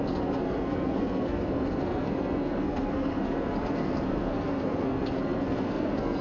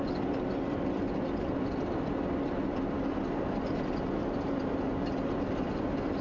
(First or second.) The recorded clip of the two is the second